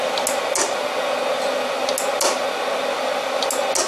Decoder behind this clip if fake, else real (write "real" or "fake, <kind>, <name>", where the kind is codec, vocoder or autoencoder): real